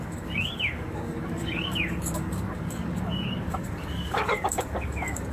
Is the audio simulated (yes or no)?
yes